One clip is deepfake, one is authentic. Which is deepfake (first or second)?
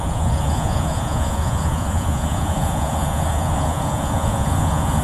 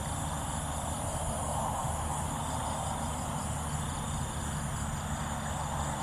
first